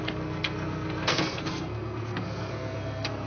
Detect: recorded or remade remade